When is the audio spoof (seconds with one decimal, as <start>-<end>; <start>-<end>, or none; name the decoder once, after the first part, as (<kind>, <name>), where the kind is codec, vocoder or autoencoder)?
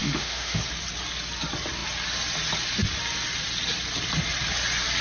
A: 0.0-0.6 (autoencoder, DAC-VAE)